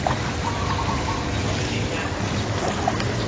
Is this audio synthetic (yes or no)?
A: no